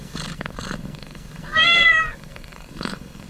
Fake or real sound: fake